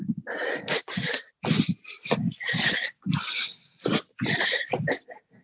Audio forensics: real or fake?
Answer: real